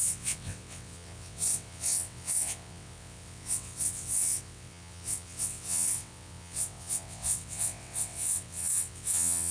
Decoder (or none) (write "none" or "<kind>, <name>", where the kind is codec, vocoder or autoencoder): vocoder, WaveNeXt